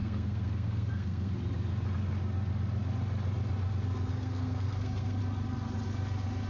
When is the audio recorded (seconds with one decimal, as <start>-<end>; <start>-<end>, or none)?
1.3-4.1; 5.2-6.5